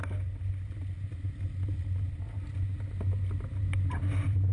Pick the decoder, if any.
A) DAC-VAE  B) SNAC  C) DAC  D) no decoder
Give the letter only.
D